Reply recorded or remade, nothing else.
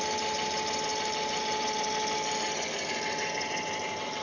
recorded